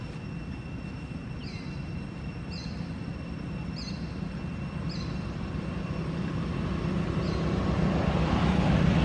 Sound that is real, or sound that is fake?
real